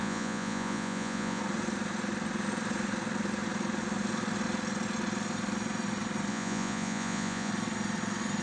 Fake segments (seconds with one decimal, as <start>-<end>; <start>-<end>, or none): 0.0-1.4; 6.3-7.5